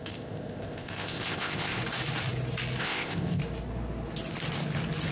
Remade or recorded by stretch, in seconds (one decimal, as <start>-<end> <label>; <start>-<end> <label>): 0.0-1.8 remade; 1.8-2.8 recorded; 2.8-3.4 remade; 3.4-5.1 recorded